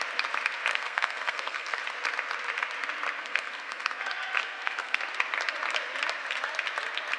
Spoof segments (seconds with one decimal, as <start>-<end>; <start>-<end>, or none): 0.7-1.8; 3.2-4.0; 4.4-5.0